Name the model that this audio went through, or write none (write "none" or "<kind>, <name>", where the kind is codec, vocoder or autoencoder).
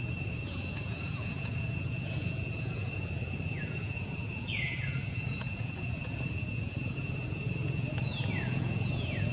vocoder, Vocos